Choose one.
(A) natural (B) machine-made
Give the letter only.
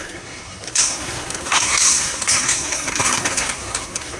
B